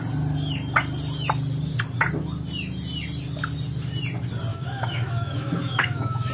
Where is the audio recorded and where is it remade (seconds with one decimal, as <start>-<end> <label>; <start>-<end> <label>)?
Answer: 0.0-4.5 recorded; 4.5-6.3 remade